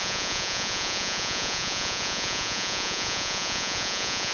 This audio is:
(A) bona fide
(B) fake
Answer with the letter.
B